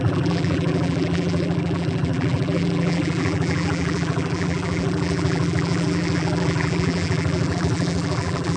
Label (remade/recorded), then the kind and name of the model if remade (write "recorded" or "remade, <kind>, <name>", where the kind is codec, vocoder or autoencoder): remade, vocoder, BigVGAN v2